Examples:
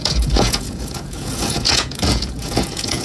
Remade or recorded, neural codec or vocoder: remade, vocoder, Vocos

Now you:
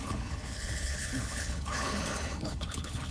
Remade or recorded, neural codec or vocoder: remade, codec, HILCodec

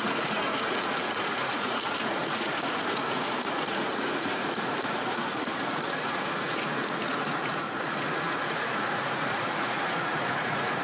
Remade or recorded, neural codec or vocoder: remade, vocoder, Vocos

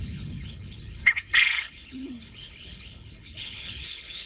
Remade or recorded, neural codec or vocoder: remade, codec, HILCodec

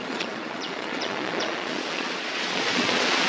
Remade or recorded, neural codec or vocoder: remade, vocoder, Vocos